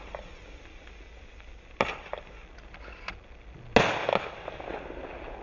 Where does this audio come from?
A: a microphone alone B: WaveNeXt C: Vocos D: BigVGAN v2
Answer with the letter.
A